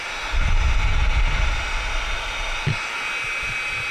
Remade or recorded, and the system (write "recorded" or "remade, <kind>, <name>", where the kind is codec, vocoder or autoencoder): remade, vocoder, BigVGAN v2